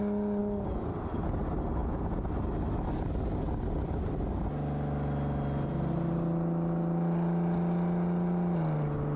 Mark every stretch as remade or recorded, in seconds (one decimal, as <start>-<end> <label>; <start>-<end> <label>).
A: 0.0-1.8 recorded; 1.8-2.3 remade; 2.3-9.2 recorded

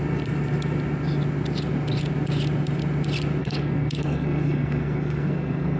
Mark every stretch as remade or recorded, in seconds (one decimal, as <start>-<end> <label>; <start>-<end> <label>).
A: 0.0-3.4 recorded; 3.4-5.8 remade

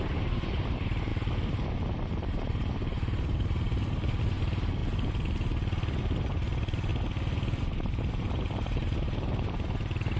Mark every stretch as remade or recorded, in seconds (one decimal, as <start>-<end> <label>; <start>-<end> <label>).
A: 0.0-4.8 remade; 4.8-6.0 recorded; 6.0-6.9 remade; 6.9-7.6 recorded; 7.6-10.2 remade

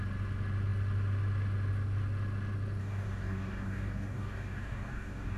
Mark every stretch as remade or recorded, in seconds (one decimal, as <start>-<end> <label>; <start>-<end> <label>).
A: 0.0-2.8 recorded; 2.8-5.4 remade

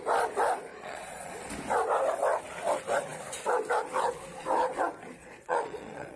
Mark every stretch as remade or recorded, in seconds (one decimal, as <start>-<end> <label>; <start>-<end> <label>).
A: 0.0-0.7 recorded; 0.7-1.3 remade; 1.3-5.2 recorded; 5.2-6.2 remade

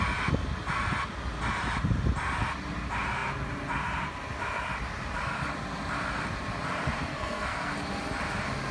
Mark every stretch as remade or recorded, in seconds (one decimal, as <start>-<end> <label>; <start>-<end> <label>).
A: 0.0-7.1 recorded; 7.1-7.7 remade; 7.7-8.7 recorded